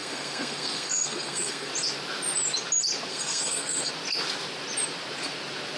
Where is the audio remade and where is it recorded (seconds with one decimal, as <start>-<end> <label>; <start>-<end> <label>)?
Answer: 0.0-1.7 remade; 1.7-3.1 recorded; 3.1-3.9 remade; 3.9-5.8 recorded